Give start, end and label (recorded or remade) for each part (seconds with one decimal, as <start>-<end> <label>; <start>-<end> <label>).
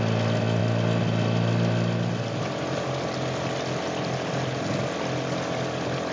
0.0-6.1 recorded